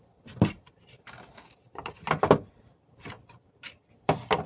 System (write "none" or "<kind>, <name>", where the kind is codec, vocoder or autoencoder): none